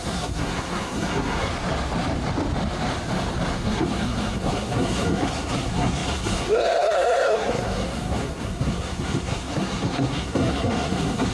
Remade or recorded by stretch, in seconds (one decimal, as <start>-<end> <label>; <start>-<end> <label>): 0.0-1.5 remade; 1.5-3.5 recorded; 3.5-11.3 remade